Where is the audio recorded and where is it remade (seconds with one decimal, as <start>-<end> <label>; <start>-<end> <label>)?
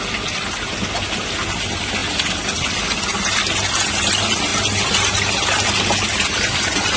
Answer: 0.0-7.0 recorded